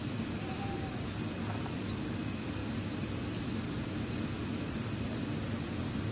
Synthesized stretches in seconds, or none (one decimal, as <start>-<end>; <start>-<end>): 0.0-1.8